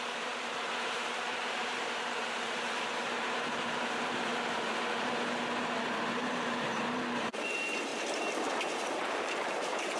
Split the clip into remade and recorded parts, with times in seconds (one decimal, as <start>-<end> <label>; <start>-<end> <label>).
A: 0.0-4.3 remade; 4.3-6.1 recorded; 6.1-7.9 remade; 7.9-8.7 recorded; 8.7-10.0 remade